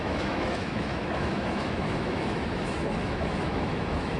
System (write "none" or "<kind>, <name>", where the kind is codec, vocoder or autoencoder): autoencoder, DAC-VAE